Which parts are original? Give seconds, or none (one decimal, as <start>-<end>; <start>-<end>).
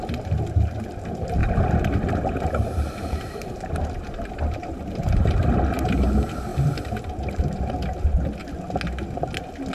0.0-1.4; 5.3-9.7